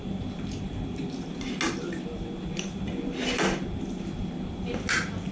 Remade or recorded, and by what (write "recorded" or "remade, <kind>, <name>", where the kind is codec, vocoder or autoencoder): recorded